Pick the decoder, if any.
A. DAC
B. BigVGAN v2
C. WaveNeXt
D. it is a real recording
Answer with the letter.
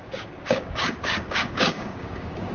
A